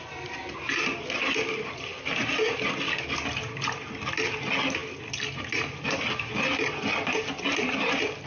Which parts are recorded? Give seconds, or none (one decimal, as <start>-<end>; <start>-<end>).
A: 0.0-8.3